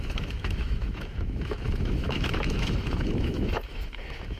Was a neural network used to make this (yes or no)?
yes